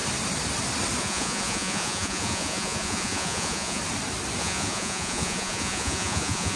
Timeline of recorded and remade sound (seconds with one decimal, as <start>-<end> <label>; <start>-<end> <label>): 0.0-1.0 recorded; 1.0-3.8 remade; 3.8-4.4 recorded; 4.4-6.6 remade